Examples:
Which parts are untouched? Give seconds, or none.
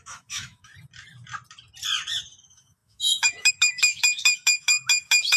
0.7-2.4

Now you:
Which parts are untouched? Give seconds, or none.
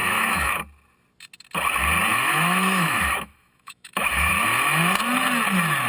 0.6-2.1; 4.3-5.9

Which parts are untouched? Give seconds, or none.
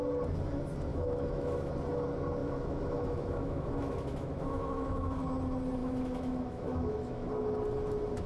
0.0-0.9; 1.7-2.4; 5.2-5.8; 7.3-8.3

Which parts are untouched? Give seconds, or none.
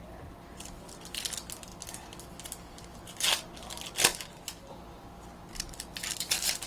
0.0-6.7